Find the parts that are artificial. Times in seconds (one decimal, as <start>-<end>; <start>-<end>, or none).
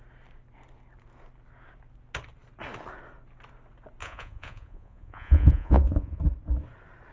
4.0-6.2